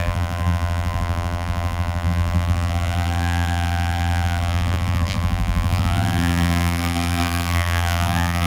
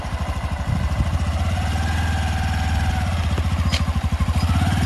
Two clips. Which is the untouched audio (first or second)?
second